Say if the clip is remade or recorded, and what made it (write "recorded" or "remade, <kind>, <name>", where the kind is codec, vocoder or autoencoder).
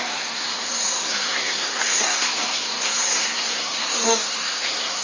remade, codec, SNAC